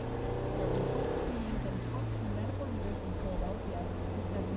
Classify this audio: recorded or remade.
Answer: recorded